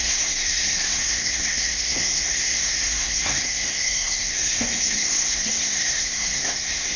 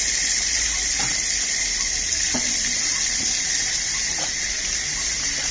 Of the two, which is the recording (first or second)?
second